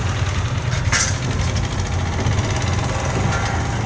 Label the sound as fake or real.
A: real